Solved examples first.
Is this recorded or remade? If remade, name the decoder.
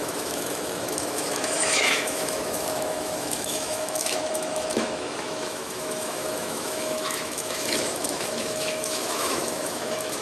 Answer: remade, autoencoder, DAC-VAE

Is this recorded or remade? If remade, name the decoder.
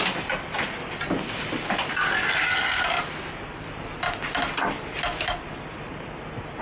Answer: recorded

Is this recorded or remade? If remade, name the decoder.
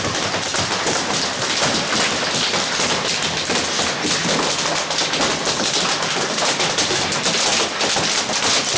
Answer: recorded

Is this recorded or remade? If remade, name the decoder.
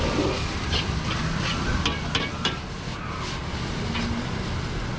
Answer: recorded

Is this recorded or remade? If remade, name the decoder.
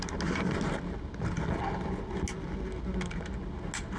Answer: recorded